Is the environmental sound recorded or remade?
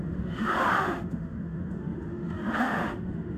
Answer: remade